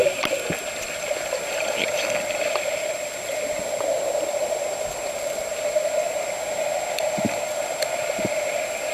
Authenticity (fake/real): real